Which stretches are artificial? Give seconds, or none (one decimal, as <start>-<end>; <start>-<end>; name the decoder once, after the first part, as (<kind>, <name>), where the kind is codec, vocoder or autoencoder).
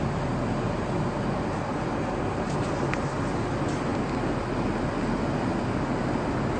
none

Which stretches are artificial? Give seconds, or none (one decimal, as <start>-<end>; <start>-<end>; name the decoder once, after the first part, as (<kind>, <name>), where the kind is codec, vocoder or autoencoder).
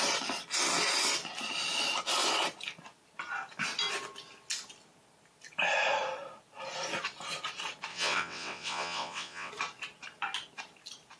7.9-9.5 (vocoder, WaveNeXt)